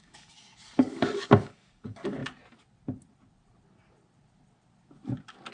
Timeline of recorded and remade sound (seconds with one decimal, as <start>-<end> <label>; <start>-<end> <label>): 0.0-2.2 remade; 2.2-5.5 recorded